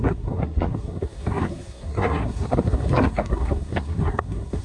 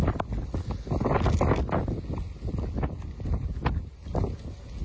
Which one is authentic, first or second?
second